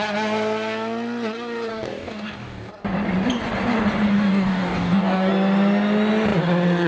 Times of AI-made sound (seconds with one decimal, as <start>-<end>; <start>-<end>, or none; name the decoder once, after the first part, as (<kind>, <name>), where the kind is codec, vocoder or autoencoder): 1.7-2.7 (codec, DAC); 4.1-5.3